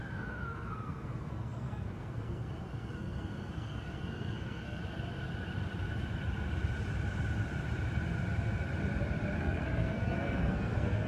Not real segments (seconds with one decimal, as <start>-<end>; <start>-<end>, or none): 0.0-4.8; 9.4-11.1